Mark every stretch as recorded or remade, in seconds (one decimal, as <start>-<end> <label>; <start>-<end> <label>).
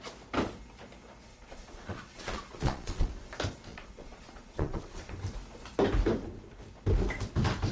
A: 0.0-1.3 recorded; 1.3-3.1 remade; 3.1-3.7 recorded; 3.7-5.1 remade; 5.1-7.7 recorded